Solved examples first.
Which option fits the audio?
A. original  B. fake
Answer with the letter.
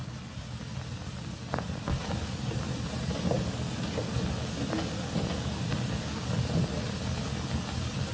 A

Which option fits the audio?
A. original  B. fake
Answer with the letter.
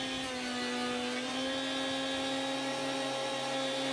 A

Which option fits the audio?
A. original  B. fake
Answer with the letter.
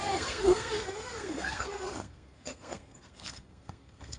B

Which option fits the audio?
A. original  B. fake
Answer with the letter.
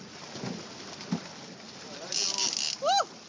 A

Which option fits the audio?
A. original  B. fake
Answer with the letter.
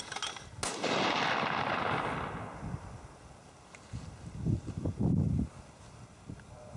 A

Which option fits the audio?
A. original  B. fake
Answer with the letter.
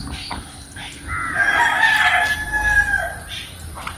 A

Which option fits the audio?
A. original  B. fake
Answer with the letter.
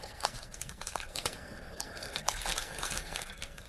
B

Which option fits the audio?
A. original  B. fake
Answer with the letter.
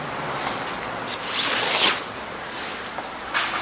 A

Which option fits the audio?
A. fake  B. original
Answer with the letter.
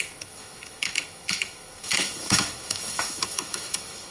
A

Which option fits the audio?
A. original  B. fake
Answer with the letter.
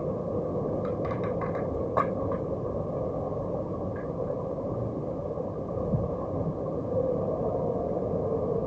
A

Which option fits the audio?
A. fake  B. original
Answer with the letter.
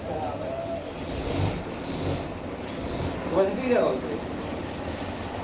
B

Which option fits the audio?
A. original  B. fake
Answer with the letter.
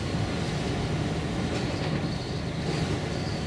A